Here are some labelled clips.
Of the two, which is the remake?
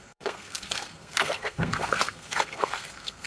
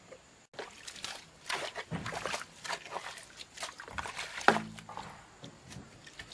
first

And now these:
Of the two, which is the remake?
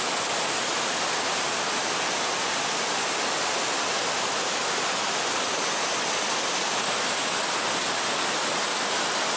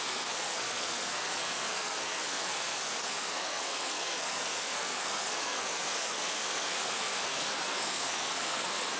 second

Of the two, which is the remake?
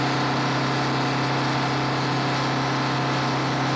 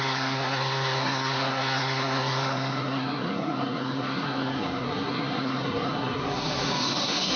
second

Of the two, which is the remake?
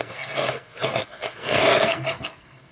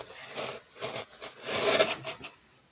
first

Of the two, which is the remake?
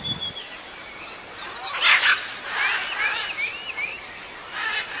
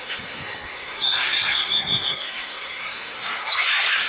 second